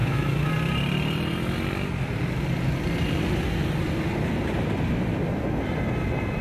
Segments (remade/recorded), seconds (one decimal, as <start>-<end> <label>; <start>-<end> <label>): 0.0-0.5 remade; 0.5-6.4 recorded